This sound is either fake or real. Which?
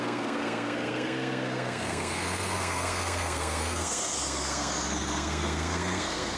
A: fake